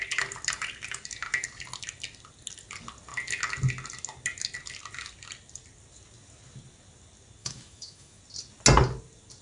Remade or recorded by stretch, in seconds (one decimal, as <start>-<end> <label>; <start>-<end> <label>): 0.0-7.4 recorded; 7.4-8.2 remade; 8.2-9.4 recorded